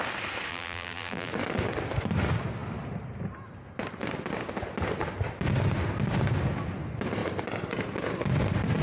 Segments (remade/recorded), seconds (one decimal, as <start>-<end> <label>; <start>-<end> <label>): 0.0-0.5 recorded; 0.5-1.3 remade; 1.3-8.8 recorded